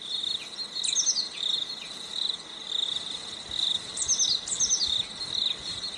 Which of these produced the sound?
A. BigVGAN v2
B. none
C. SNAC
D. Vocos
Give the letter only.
B